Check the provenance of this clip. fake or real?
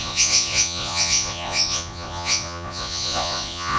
fake